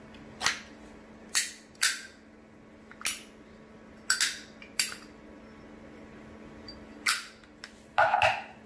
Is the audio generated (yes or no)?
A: no